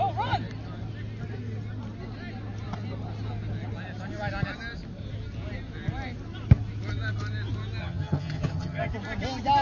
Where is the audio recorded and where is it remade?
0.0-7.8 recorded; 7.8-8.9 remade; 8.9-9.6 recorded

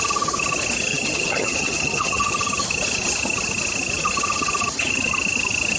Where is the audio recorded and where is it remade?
0.0-0.9 recorded; 0.9-2.3 remade; 2.3-5.8 recorded

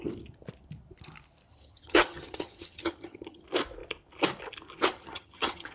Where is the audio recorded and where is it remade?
0.0-1.5 recorded; 1.5-3.4 remade; 3.4-4.9 recorded; 4.9-5.7 remade

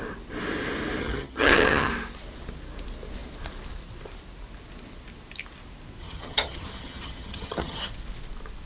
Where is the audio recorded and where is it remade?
0.0-1.0 recorded; 1.0-1.9 remade; 1.9-6.0 recorded; 6.0-7.9 remade; 7.9-8.7 recorded